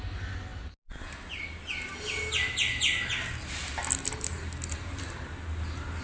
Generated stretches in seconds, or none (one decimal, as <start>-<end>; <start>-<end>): none

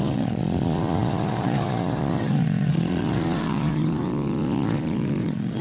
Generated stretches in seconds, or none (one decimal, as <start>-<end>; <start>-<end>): 0.0-5.6

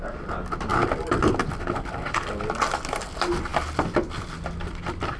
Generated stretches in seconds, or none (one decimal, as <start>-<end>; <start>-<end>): none

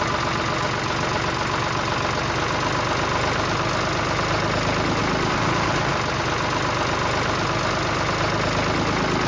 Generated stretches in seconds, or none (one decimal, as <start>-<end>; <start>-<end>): none

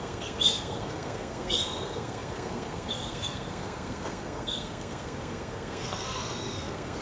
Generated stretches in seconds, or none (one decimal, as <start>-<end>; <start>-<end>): 0.0-7.0